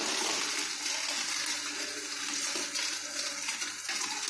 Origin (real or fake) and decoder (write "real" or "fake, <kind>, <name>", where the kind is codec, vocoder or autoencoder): real